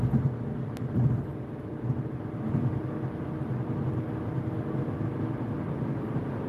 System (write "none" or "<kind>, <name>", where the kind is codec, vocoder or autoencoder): none